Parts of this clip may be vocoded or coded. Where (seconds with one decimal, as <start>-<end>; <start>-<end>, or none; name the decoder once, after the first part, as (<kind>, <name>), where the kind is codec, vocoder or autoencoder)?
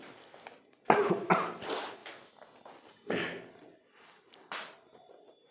none